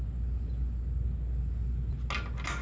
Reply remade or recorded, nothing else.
recorded